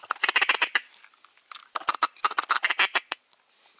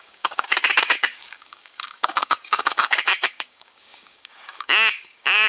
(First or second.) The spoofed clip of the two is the second